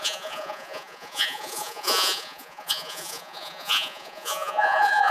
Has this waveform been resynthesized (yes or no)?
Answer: yes